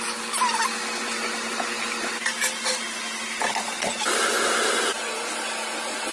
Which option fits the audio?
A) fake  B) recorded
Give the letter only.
B